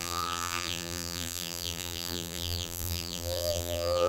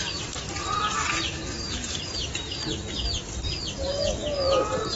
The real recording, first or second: second